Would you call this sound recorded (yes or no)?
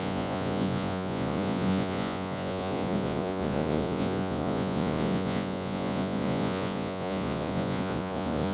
no